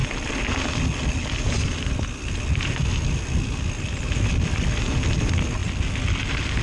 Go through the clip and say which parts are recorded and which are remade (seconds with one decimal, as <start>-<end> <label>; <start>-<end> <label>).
0.0-6.6 recorded